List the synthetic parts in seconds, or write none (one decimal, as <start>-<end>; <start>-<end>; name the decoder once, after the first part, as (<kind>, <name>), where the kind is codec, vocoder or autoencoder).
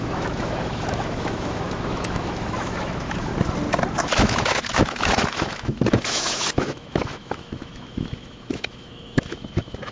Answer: 0.0-3.3 (autoencoder, DAC-VAE); 4.0-9.9